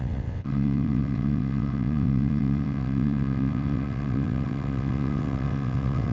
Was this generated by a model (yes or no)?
yes